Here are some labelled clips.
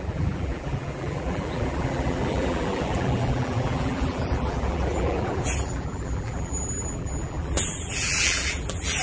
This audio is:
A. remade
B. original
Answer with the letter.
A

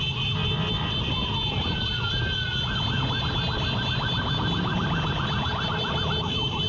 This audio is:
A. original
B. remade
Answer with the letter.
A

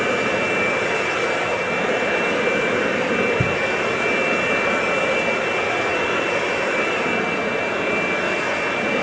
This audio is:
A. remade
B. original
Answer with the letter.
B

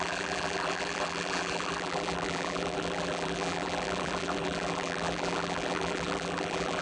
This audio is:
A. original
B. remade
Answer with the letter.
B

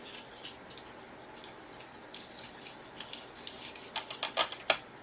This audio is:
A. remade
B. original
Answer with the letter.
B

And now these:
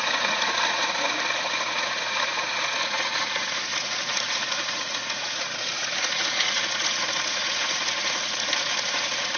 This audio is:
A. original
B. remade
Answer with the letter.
B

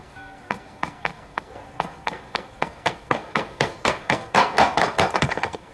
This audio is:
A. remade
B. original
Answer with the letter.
A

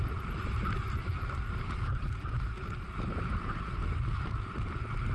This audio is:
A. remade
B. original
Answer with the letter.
B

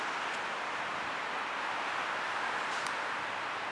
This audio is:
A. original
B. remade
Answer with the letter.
A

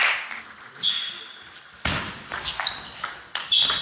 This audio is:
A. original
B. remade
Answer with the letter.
A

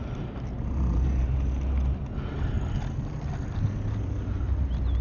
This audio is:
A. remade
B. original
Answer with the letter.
B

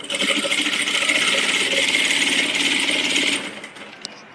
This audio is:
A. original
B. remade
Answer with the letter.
A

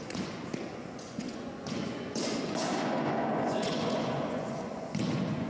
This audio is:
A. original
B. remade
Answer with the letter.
B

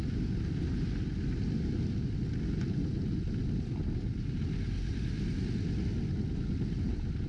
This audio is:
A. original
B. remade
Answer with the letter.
A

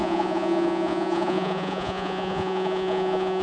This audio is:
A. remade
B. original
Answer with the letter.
A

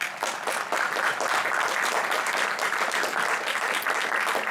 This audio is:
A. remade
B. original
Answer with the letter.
B